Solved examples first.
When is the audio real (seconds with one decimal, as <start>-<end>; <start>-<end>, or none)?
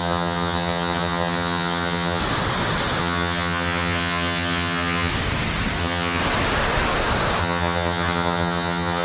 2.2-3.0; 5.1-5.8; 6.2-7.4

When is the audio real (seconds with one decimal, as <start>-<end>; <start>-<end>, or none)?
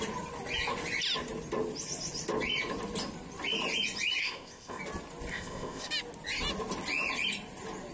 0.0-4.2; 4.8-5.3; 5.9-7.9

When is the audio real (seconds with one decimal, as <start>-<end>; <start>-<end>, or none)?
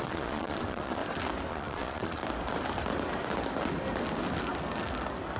1.0-1.5; 2.2-5.4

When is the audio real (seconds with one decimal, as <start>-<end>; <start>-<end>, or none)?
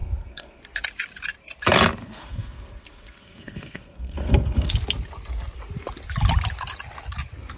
0.6-2.0; 4.7-7.6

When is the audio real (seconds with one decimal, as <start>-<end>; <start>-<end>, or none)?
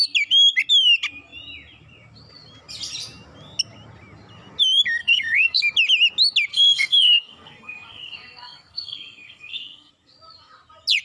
0.0-5.0; 5.6-6.5; 9.9-11.0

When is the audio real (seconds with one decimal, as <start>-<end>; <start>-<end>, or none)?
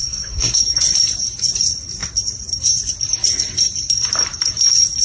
0.6-5.0